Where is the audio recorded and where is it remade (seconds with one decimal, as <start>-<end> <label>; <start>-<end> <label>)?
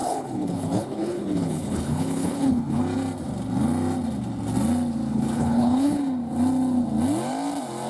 0.0-2.8 remade; 2.8-5.1 recorded; 5.1-6.0 remade; 6.0-7.9 recorded